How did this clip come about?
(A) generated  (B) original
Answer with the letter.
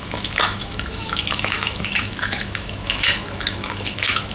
A